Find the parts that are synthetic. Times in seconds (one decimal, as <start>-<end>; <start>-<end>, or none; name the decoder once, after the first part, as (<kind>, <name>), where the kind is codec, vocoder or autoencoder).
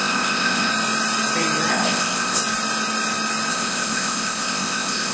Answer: 0.0-0.7 (codec, ZipCodec); 1.7-2.4; 3.5-5.1